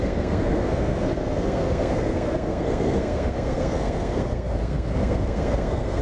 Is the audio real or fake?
fake